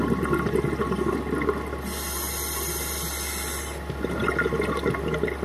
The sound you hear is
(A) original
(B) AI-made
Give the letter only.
A